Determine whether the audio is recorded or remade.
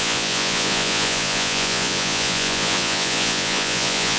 remade